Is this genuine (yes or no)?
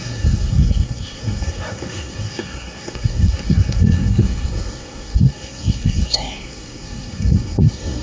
no